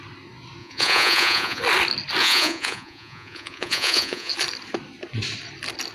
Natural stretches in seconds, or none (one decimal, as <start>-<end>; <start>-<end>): 0.0-0.6; 1.6-2.2; 4.3-5.9